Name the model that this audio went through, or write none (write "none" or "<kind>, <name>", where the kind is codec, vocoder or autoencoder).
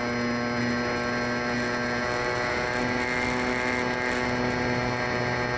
none